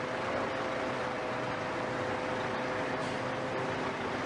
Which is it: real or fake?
real